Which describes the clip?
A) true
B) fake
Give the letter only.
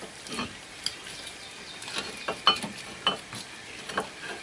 A